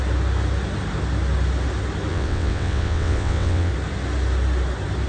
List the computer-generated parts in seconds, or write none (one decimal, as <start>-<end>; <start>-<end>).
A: 2.1-3.7